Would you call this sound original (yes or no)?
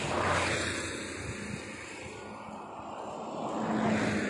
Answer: yes